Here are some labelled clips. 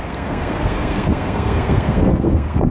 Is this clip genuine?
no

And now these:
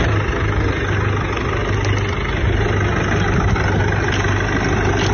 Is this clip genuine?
yes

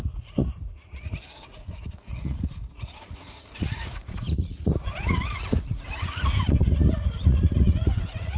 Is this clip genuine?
no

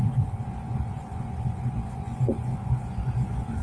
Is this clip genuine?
no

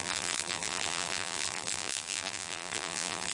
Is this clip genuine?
no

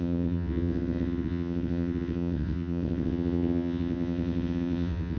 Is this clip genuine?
no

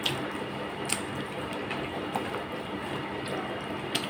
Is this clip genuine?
yes